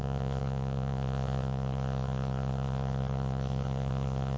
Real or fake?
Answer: fake